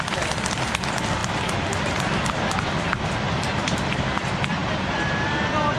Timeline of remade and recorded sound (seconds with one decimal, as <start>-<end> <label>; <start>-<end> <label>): 0.0-1.2 remade; 1.2-2.4 recorded; 2.4-5.8 remade